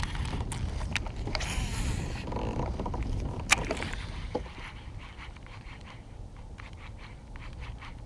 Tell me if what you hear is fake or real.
real